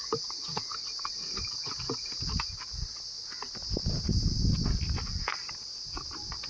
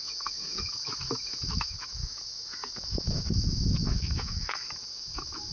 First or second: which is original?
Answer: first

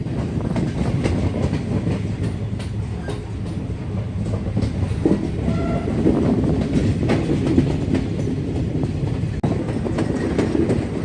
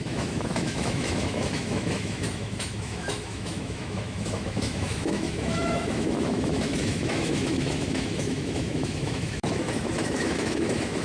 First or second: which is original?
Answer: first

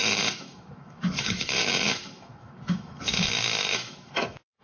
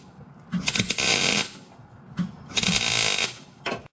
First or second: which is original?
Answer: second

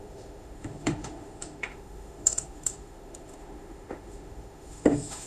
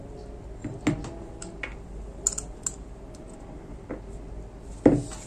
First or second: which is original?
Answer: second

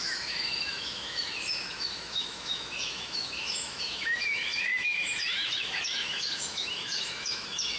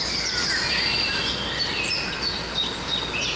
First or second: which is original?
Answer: second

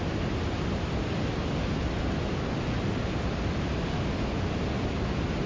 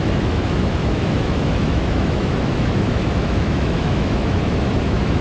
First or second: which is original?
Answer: first